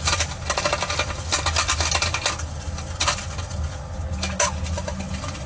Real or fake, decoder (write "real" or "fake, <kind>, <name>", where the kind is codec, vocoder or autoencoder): real